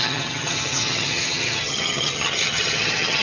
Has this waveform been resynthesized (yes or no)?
yes